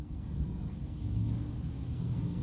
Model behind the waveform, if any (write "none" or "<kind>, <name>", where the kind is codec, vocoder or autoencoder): codec, SNAC